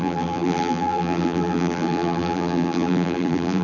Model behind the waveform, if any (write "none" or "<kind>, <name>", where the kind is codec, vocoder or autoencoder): vocoder, BigVGAN v2